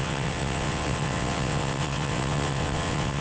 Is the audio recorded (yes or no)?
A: no